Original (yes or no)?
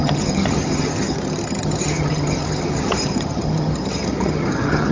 no